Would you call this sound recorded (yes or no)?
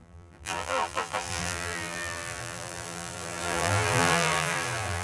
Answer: no